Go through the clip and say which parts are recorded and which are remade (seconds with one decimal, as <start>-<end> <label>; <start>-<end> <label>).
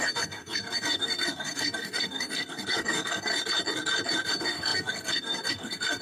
0.0-3.3 remade; 3.3-4.3 recorded; 4.3-6.0 remade